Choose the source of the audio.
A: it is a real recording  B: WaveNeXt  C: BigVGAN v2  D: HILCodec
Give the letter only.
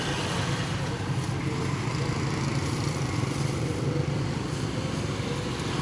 A